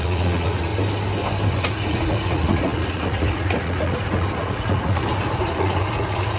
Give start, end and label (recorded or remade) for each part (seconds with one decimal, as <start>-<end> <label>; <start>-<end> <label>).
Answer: 0.0-0.7 remade; 0.7-1.5 recorded; 1.5-6.4 remade